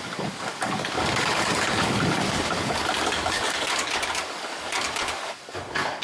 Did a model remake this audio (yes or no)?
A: yes